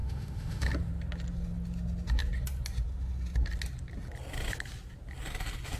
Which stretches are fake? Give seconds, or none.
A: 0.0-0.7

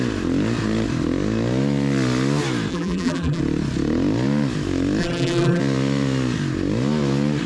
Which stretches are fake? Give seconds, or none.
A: 2.7-3.4; 5.0-5.6

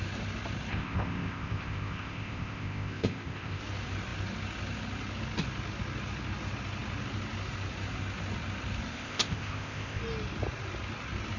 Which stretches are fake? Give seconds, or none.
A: 0.7-3.6; 8.9-10.0

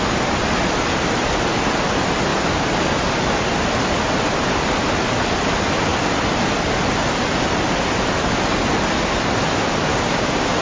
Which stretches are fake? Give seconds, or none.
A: 9.9-10.6

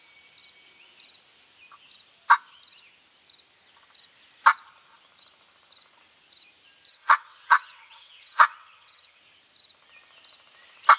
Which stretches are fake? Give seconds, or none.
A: 6.9-9.2

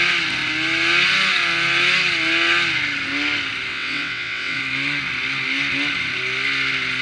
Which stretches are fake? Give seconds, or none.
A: 3.7-4.6

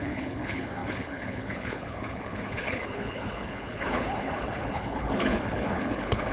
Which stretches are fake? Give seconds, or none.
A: 0.0-6.3

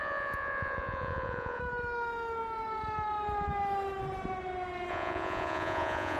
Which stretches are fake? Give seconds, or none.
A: 0.0-1.6; 4.9-6.2